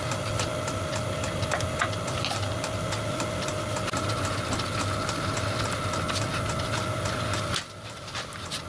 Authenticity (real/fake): real